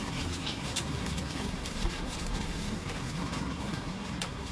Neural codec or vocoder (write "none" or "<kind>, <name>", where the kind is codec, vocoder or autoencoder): codec, SNAC